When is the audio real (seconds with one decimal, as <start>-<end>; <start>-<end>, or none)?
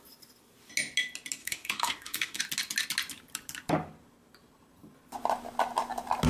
0.0-1.4; 2.4-6.3